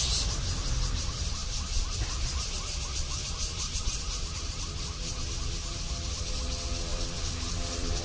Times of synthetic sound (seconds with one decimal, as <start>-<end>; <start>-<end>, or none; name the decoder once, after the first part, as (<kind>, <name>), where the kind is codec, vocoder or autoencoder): 1.4-6.2 (vocoder, BigVGAN v2); 6.9-8.0